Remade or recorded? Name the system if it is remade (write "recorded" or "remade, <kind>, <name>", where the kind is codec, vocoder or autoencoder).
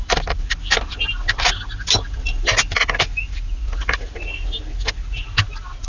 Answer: recorded